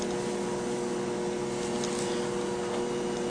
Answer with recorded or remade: recorded